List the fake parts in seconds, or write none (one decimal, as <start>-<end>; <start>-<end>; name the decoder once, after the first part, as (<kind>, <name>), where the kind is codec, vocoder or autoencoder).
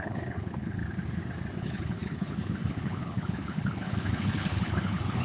0.0-0.8 (codec, HILCodec); 1.6-5.2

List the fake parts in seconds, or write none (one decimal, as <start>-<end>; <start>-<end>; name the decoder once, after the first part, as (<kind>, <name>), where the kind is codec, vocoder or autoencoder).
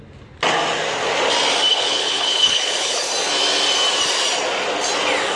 1.7-3.1 (codec, HILCodec)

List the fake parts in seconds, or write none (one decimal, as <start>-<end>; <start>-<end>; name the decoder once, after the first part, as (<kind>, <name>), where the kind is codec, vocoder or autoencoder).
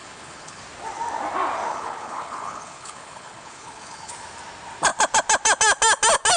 0.0-0.6 (codec, HILCodec); 1.7-4.1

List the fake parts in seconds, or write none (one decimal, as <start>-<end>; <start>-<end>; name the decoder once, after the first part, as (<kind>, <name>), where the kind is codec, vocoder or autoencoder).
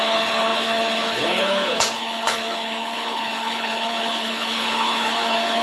0.0-5.6 (codec, HILCodec)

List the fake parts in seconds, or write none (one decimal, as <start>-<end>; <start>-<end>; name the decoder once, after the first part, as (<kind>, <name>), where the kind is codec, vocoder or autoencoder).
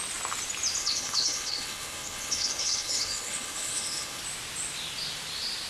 0.8-4.2 (codec, HILCodec)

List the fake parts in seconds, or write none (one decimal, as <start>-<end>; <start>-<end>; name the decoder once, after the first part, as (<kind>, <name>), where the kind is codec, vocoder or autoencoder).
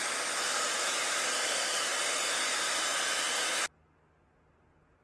none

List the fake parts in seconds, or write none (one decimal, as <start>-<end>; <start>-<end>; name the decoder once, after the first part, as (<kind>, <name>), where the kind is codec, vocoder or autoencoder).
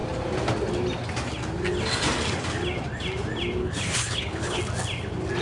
3.6-4.6 (codec, HILCodec)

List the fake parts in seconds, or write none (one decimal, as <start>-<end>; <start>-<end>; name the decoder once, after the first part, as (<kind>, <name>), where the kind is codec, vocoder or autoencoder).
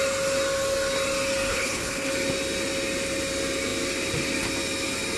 1.5-2.1 (codec, HILCodec)